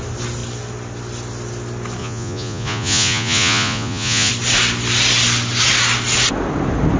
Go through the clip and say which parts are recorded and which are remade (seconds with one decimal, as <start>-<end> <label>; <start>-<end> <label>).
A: 0.0-2.0 recorded; 2.0-4.3 remade; 4.3-7.0 recorded